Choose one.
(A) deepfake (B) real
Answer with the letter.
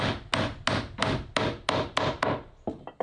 B